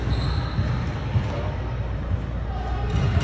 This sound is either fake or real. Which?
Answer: real